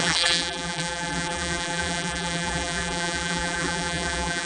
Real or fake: fake